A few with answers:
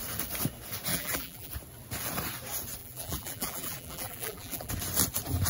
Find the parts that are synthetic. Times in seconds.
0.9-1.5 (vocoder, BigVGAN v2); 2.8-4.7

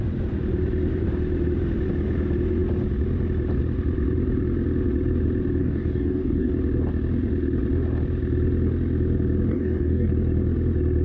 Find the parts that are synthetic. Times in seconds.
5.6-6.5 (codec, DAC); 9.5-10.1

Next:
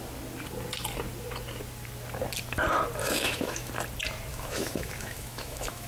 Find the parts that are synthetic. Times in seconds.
3.0-3.7 (autoencoder, DAC-VAE); 4.3-5.9

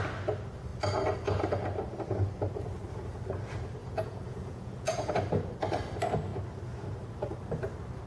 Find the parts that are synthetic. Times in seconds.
3.8-5.1 (vocoder, Vocos)

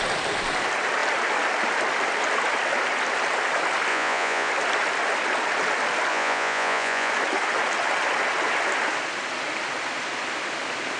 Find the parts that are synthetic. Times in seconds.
3.9-4.5 (vocoder, Vocos); 6.1-7.1